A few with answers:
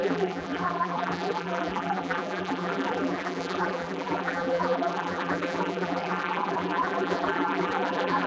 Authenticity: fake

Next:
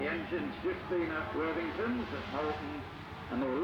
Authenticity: real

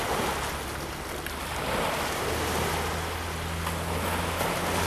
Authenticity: real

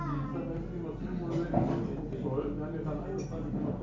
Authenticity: real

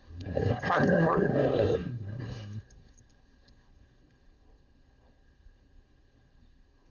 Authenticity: fake